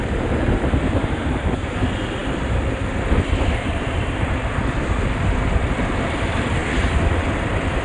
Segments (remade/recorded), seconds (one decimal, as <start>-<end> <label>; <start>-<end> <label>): 0.0-7.8 recorded